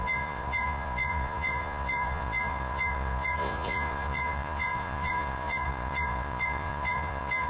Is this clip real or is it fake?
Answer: fake